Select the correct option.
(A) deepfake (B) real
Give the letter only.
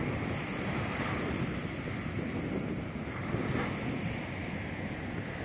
B